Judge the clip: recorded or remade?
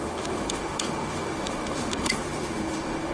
remade